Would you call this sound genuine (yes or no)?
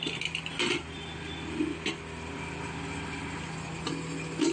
yes